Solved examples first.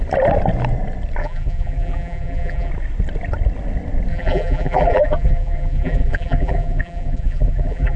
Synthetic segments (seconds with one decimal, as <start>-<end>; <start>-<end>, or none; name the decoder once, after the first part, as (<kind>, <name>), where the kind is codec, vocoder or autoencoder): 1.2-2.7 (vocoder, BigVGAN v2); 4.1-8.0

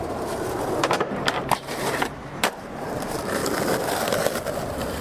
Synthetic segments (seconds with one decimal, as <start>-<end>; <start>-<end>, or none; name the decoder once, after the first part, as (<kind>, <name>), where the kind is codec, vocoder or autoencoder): 0.0-3.4 (vocoder, BigVGAN v2); 4.6-5.0

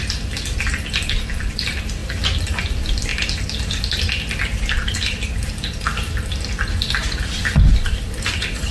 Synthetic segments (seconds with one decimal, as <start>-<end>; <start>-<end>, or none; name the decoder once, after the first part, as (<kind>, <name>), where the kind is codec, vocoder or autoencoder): 3.1-6.8 (vocoder, BigVGAN v2)